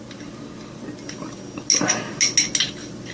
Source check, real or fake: real